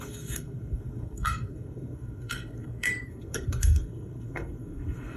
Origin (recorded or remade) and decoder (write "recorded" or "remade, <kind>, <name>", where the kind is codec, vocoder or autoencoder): remade, codec, SNAC